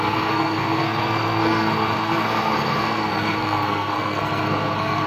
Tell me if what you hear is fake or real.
fake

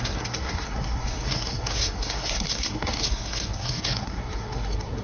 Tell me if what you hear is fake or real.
fake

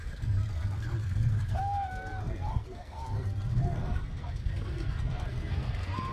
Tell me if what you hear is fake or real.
fake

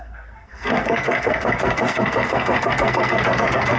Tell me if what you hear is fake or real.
fake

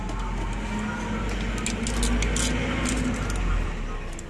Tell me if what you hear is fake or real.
real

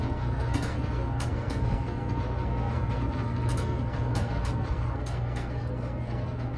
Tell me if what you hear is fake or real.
fake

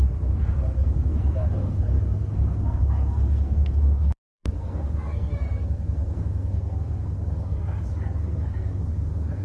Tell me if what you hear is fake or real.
fake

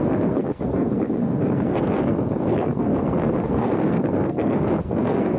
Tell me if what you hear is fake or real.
fake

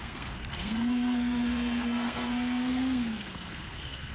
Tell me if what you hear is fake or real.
fake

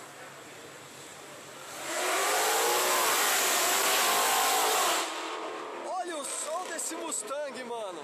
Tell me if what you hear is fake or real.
real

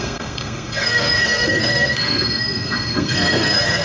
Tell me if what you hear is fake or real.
fake